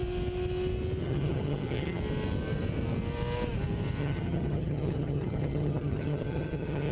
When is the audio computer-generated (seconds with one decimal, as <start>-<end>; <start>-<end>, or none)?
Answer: 1.0-2.0; 4.0-6.9